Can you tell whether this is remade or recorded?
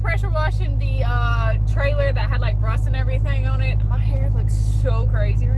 recorded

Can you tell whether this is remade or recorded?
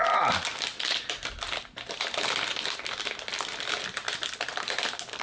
recorded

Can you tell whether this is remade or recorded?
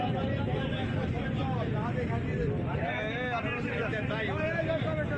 recorded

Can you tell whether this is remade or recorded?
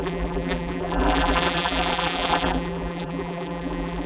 remade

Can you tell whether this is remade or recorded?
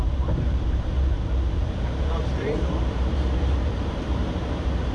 remade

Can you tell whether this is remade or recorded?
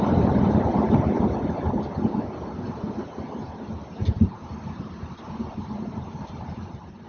remade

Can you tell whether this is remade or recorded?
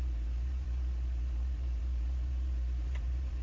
remade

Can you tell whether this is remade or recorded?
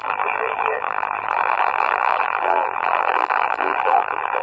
remade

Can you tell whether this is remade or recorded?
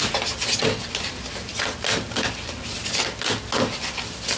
recorded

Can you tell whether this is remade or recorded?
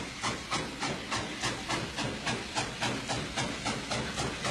recorded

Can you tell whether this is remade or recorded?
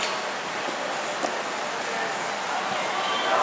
recorded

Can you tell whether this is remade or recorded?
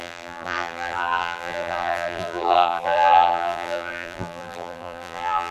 remade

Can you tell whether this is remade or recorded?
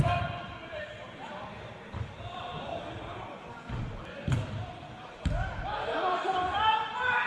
remade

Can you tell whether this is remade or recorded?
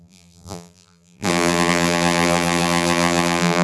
remade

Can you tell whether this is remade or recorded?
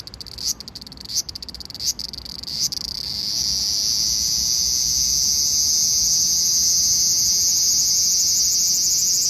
recorded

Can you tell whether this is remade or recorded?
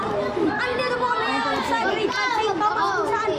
recorded